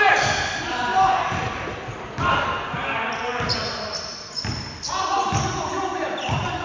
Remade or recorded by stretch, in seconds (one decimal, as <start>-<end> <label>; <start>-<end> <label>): 0.0-6.6 recorded